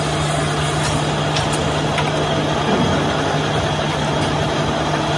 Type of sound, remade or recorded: recorded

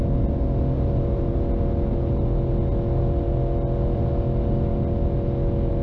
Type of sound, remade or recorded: recorded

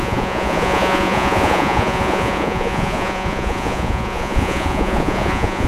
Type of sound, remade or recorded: remade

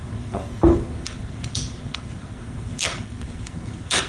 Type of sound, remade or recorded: remade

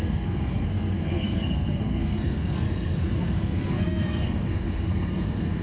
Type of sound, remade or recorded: remade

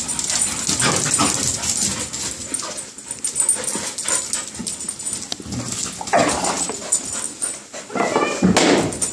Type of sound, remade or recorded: recorded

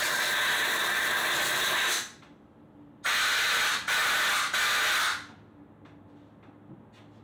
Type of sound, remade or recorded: recorded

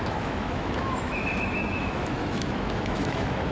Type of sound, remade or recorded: remade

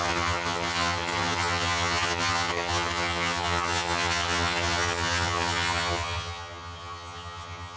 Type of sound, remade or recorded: remade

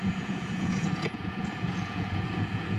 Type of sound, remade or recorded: remade